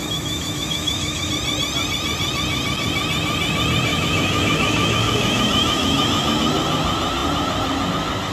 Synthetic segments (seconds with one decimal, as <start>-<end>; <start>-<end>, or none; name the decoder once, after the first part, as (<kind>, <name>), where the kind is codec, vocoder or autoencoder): 0.0-1.3 (autoencoder, DAC-VAE); 3.9-6.4